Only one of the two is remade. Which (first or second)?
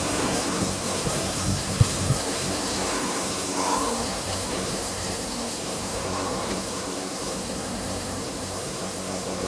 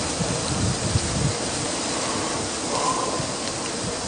first